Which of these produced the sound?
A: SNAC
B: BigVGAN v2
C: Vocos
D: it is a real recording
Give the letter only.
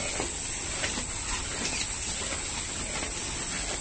D